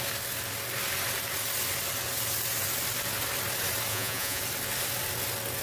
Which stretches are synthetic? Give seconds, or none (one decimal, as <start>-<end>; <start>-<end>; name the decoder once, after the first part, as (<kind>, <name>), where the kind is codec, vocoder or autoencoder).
3.9-4.4 (vocoder, Vocos)